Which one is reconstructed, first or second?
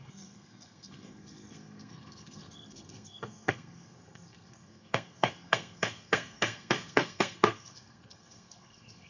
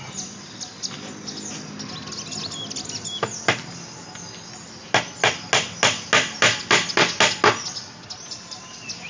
first